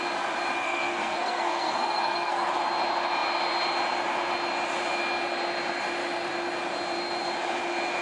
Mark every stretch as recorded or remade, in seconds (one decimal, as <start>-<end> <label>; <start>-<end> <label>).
0.0-0.6 recorded; 0.6-2.5 remade; 2.5-8.0 recorded

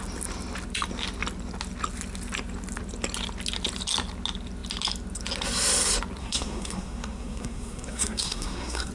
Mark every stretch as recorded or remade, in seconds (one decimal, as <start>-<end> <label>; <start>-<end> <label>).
0.0-6.2 recorded; 6.2-8.9 remade

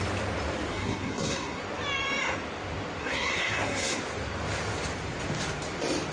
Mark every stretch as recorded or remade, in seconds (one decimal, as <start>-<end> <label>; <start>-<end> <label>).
0.0-0.7 recorded; 0.7-1.6 remade; 1.6-3.0 recorded; 3.0-4.0 remade; 4.0-6.1 recorded

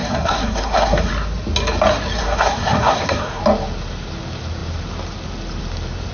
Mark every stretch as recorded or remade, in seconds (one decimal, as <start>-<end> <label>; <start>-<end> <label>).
0.0-1.1 remade; 1.1-2.2 recorded; 2.2-3.4 remade; 3.4-6.1 recorded

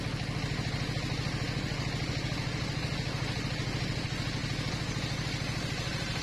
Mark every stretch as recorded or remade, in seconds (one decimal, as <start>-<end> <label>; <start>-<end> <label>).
0.0-6.2 recorded

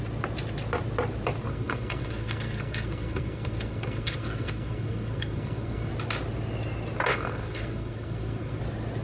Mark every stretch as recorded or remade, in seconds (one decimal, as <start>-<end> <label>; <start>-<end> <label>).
0.0-1.5 recorded; 1.5-5.9 remade; 5.9-7.1 recorded; 7.1-8.6 remade; 8.6-9.0 recorded

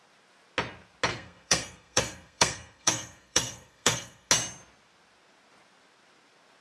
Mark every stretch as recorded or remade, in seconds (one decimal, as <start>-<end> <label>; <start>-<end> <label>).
0.0-1.1 recorded; 1.1-4.3 remade; 4.3-6.6 recorded